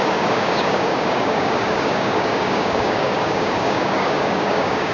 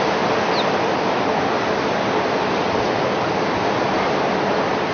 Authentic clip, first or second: second